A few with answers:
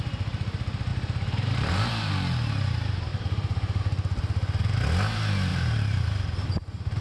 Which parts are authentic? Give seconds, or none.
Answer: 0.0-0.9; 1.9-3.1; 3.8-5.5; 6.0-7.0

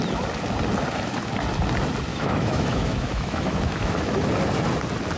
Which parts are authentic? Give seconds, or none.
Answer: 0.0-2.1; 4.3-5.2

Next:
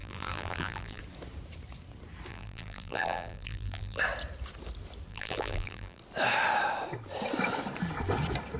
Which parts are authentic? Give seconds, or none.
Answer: 1.0-2.3; 4.0-5.1; 6.0-8.6